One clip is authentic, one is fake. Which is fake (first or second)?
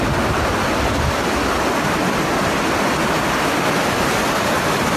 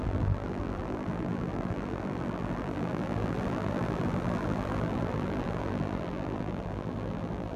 second